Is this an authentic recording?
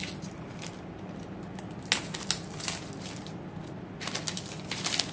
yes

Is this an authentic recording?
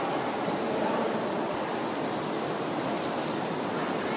yes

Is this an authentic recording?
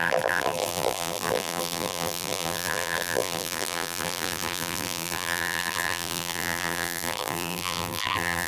no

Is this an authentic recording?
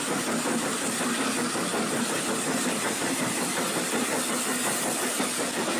yes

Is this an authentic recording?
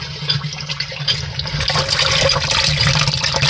yes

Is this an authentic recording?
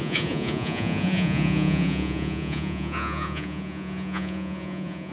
no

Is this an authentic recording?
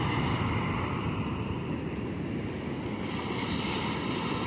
yes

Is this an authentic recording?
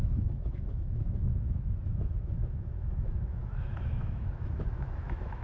no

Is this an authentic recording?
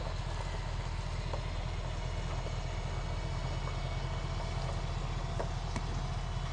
yes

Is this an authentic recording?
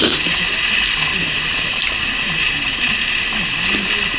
yes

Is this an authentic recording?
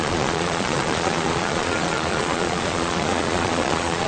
no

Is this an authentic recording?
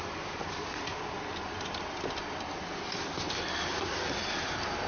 yes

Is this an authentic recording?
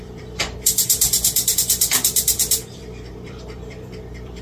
no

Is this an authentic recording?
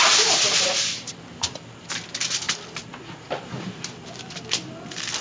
yes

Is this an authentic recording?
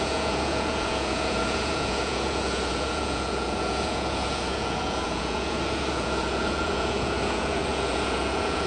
no